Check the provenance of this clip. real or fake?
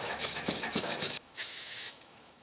fake